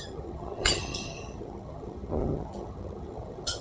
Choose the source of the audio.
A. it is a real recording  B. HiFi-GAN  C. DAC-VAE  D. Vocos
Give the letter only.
B